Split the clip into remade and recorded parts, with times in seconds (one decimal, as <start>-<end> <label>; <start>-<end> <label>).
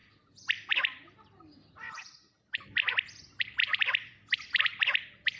0.0-5.4 recorded